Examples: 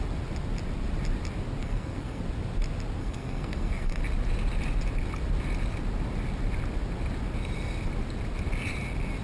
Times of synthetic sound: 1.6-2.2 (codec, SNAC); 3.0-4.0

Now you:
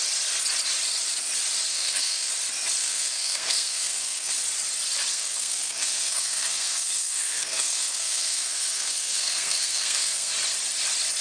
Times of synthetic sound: 1.7-2.3 (codec, SNAC); 2.8-4.3; 5.1-10.3

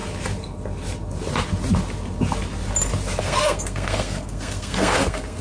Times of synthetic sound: 3.2-5.4 (codec, SNAC)